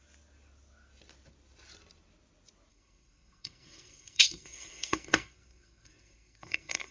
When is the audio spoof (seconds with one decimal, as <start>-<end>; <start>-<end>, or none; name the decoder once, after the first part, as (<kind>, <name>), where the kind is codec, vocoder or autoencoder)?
2.7-6.9 (codec, SNAC)